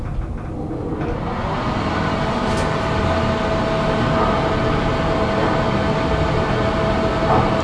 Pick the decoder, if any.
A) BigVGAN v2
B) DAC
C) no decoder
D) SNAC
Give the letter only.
C